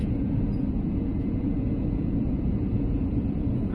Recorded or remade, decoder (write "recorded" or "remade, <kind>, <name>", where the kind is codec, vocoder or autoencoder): remade, vocoder, Vocos